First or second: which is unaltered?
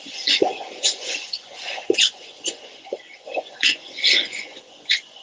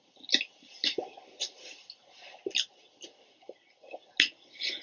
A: second